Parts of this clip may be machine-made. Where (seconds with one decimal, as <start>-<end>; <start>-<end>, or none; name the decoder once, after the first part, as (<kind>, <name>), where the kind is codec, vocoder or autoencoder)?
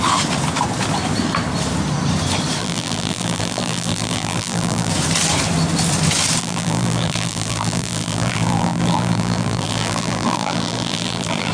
2.6-4.9 (vocoder, BigVGAN v2); 6.4-11.5